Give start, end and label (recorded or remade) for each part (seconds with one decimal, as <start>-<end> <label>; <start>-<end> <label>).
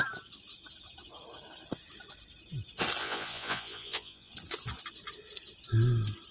0.0-3.0 recorded; 3.0-4.3 remade; 4.3-6.3 recorded